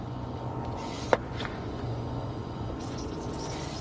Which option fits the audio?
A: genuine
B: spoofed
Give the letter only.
B